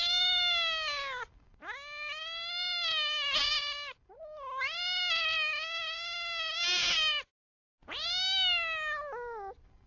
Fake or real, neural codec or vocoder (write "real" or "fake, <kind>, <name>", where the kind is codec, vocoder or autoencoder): real